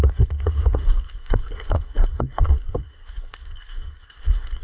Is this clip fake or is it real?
fake